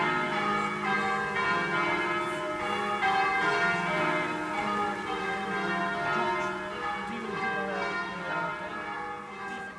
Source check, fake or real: real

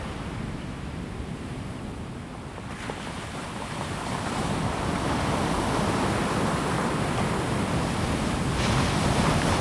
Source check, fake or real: real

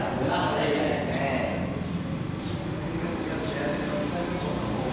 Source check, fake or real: real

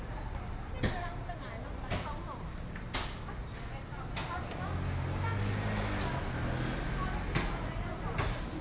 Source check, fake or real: real